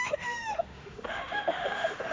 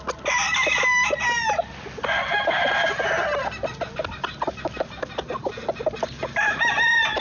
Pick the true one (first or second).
second